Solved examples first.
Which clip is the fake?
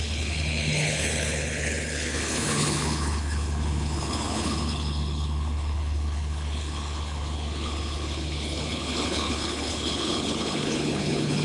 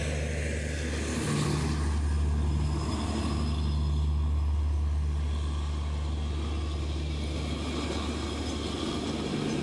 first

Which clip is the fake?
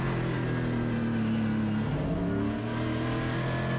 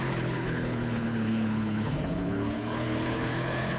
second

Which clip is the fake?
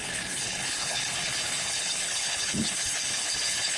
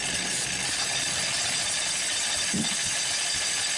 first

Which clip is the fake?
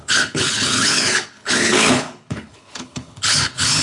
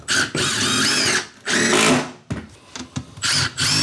first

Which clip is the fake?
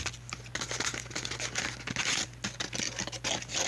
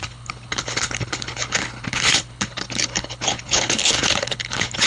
second